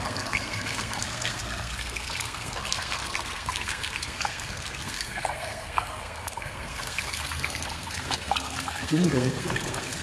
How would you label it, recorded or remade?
remade